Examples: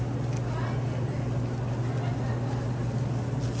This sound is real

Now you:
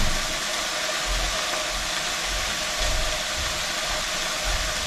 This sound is real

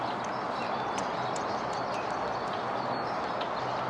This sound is real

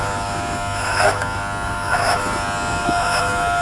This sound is fake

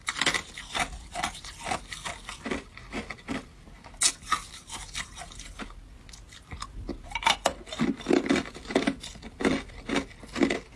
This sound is real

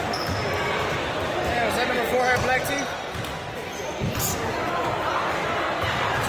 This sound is real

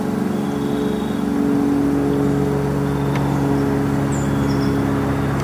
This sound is real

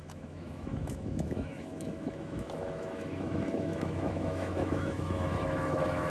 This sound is fake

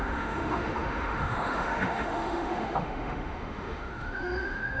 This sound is fake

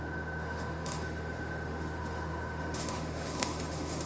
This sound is fake